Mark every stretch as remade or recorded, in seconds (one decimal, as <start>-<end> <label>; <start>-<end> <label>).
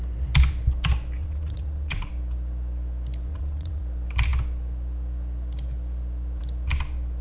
0.0-1.2 recorded; 1.2-2.1 remade; 2.1-3.3 recorded; 3.3-3.8 remade; 3.8-7.2 recorded